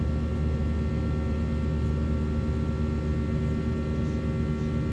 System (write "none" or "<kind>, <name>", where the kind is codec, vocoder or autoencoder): none